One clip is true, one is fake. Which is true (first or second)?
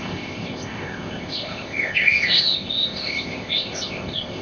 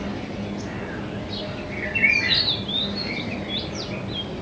second